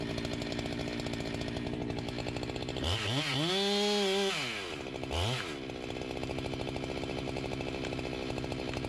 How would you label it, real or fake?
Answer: real